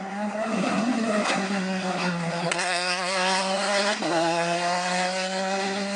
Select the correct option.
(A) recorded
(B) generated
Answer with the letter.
B